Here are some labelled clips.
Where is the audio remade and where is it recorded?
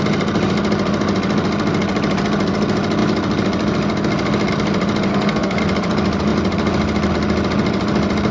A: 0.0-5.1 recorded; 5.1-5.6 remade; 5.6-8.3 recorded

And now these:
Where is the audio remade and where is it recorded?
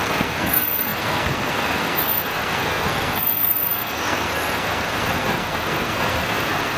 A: 0.0-6.8 remade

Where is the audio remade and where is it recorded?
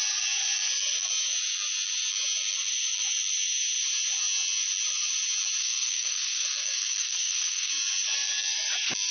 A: 0.0-5.6 recorded; 5.6-7.7 remade; 7.7-9.1 recorded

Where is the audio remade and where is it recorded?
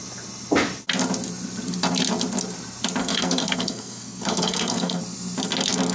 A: 0.0-3.0 recorded; 3.0-5.0 remade; 5.0-5.9 recorded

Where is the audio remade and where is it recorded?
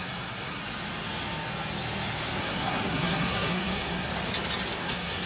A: 0.0-0.6 remade; 0.6-2.4 recorded; 2.4-4.1 remade; 4.1-4.8 recorded; 4.8-5.3 remade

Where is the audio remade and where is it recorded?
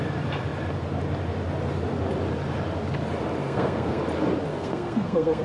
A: 0.0-3.4 recorded; 3.4-4.0 remade; 4.0-4.5 recorded; 4.5-5.4 remade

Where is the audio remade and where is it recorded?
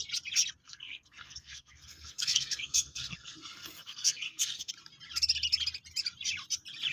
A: 0.0-0.6 recorded; 0.6-4.7 remade; 4.7-6.9 recorded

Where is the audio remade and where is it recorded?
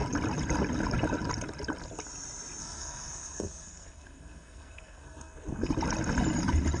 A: 0.0-2.6 recorded; 2.6-5.7 remade; 5.7-6.8 recorded